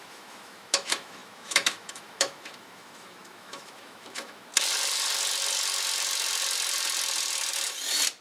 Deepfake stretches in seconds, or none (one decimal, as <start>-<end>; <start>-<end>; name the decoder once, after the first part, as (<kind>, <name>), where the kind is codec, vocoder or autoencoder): 0.0-4.5 (autoencoder, DAC-VAE)